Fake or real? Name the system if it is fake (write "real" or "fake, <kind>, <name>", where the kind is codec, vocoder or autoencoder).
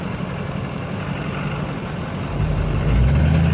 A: real